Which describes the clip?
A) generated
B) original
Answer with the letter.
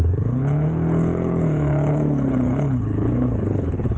A